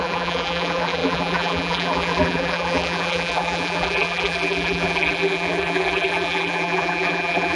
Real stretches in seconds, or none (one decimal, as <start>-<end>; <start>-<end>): none